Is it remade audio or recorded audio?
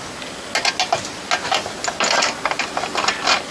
recorded